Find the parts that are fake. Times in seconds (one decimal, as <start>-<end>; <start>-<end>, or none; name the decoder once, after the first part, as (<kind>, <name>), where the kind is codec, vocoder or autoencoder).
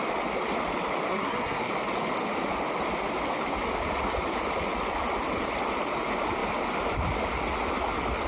1.1-1.7 (codec, SNAC)